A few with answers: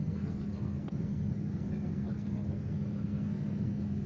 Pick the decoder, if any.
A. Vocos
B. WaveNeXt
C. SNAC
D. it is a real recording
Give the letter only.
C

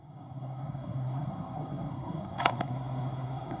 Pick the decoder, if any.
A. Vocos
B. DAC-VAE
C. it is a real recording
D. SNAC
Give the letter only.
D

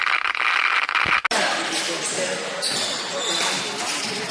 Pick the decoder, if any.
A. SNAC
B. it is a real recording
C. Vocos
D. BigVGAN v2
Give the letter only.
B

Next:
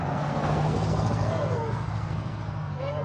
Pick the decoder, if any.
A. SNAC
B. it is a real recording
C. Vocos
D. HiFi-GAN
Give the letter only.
A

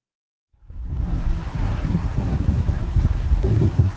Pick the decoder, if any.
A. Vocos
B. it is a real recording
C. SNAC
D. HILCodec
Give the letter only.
C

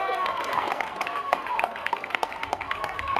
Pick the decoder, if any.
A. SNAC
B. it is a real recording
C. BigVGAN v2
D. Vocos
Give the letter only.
A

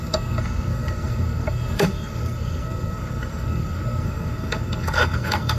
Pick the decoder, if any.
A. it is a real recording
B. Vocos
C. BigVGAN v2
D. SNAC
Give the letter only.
D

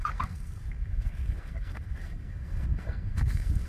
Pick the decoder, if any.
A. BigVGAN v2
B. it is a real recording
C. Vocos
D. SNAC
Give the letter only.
D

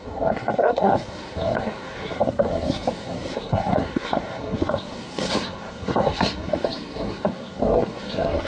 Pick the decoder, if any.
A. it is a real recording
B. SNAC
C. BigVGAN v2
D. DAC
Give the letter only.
B